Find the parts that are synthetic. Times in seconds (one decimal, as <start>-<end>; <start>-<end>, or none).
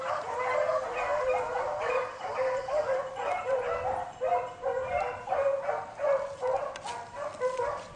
none